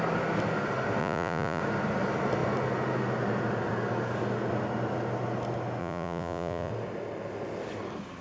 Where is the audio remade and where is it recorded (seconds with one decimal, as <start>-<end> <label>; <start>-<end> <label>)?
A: 0.0-1.0 recorded; 1.0-1.6 remade; 1.6-5.8 recorded; 5.8-6.7 remade; 6.7-8.2 recorded